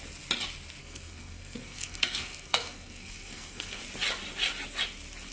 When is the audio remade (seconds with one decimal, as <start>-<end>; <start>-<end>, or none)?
0.8-3.8